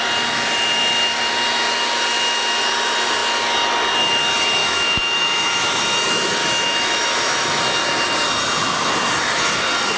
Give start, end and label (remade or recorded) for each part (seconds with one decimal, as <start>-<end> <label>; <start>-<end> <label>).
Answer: 0.0-4.6 recorded; 4.6-5.8 remade; 5.8-6.4 recorded; 6.4-7.6 remade; 7.6-10.0 recorded